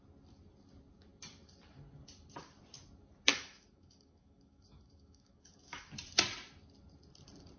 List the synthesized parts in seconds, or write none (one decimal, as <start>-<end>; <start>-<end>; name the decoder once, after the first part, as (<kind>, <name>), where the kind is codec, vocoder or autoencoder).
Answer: 3.3-5.9 (autoencoder, DAC-VAE)